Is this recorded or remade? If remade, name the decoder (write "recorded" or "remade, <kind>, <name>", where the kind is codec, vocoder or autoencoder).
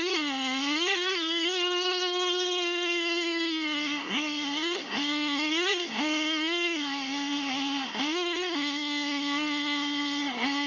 remade, codec, SNAC